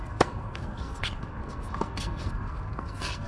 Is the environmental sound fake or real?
fake